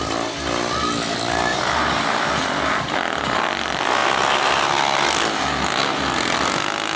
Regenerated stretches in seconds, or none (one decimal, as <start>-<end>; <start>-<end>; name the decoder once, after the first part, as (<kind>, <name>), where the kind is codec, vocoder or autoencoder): 1.5-2.4 (vocoder, BigVGAN v2)